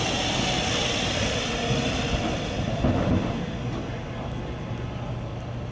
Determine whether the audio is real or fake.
real